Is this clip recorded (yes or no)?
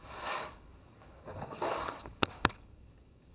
no